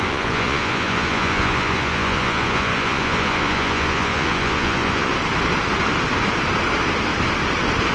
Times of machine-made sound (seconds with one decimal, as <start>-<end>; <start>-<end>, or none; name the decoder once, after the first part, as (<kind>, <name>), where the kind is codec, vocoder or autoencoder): 0.0-5.1 (vocoder, Vocos)